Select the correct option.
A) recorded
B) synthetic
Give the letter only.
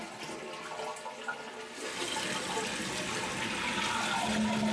A